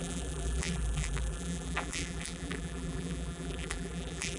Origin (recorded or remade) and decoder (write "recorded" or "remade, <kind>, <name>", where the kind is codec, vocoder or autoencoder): remade, vocoder, BigVGAN v2